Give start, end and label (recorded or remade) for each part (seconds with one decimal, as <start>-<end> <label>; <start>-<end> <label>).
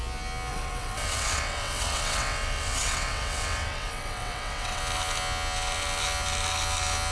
0.0-0.5 recorded; 0.5-4.8 remade; 4.8-7.1 recorded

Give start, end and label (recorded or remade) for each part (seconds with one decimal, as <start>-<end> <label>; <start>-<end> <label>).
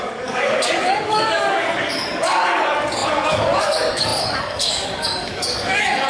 0.0-6.1 remade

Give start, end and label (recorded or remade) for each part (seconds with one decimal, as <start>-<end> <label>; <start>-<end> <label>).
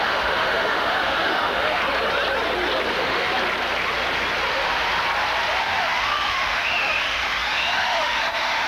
0.0-1.8 remade; 1.8-2.9 recorded; 2.9-3.3 remade; 3.3-4.5 recorded; 4.5-4.9 remade; 4.9-5.6 recorded; 5.6-8.7 remade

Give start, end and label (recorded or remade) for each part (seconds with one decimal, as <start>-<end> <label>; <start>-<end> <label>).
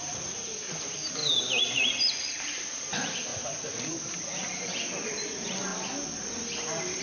0.0-1.2 remade; 1.2-2.4 recorded; 2.4-4.7 remade; 4.7-5.2 recorded; 5.2-5.7 remade; 5.7-7.0 recorded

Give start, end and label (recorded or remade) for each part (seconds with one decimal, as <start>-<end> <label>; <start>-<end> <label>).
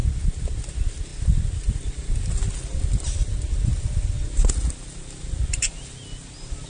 0.0-6.7 recorded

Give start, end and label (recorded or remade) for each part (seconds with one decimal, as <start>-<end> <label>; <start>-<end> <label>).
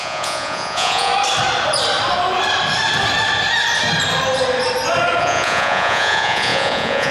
0.0-1.1 remade; 1.1-5.2 recorded; 5.2-7.1 remade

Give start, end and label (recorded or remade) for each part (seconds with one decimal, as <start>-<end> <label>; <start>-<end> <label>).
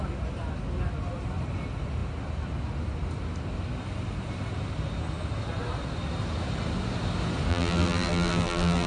0.0-7.5 recorded; 7.5-8.9 remade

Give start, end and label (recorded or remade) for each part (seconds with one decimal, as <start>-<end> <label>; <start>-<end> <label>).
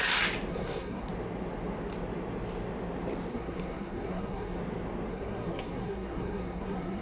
0.0-0.5 recorded; 0.5-1.1 remade; 1.1-3.3 recorded; 3.3-4.6 remade; 4.6-5.1 recorded; 5.1-7.0 remade